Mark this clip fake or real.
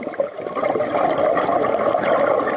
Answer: real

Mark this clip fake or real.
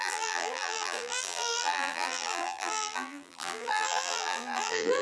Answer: fake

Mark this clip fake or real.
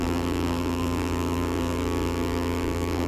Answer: fake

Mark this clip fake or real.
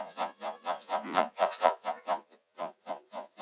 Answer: fake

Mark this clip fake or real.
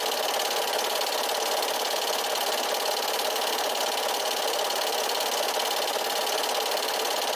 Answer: real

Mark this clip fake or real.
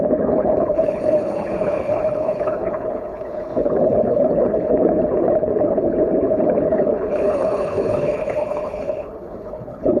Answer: fake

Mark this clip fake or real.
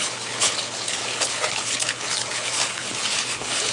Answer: fake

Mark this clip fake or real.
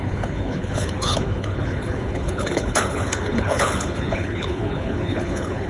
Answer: fake